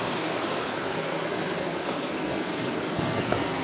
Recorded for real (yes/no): no